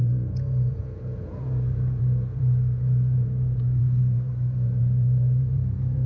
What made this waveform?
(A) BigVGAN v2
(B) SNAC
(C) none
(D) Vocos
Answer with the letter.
D